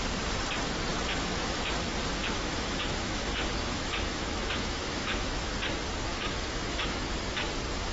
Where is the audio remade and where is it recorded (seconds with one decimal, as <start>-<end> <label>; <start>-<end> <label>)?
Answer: 0.0-0.9 recorded; 0.9-1.8 remade; 1.8-2.2 recorded; 2.2-5.5 remade; 5.5-6.1 recorded; 6.1-7.1 remade; 7.1-7.9 recorded